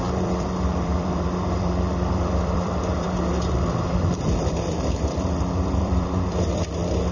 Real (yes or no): no